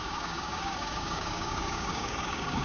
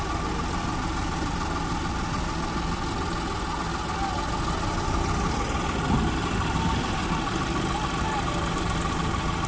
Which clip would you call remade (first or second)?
first